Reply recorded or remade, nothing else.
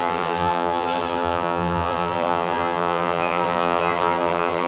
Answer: remade